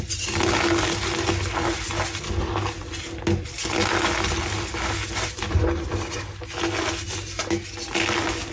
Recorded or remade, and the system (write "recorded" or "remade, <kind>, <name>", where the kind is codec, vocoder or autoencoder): recorded